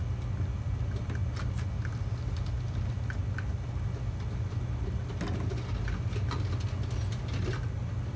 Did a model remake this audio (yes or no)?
no